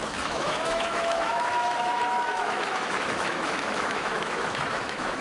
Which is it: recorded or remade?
remade